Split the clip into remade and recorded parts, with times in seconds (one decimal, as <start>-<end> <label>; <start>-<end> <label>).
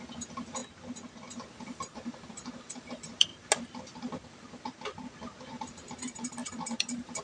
0.0-0.6 remade; 0.6-1.3 recorded; 1.3-3.3 remade; 3.3-5.5 recorded; 5.5-7.2 remade